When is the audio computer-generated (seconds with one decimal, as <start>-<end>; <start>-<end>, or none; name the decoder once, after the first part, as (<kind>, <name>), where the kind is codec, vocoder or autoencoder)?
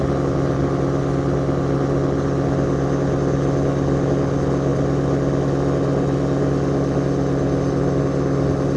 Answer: none